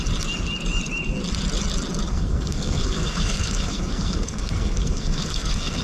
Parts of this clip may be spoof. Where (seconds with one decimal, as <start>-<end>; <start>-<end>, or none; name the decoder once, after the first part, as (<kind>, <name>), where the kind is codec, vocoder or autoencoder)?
2.1-5.8 (codec, SNAC)